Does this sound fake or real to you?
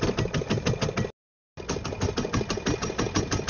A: real